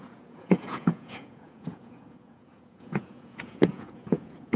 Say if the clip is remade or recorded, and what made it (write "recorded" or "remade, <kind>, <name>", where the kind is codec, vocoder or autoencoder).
remade, vocoder, Vocos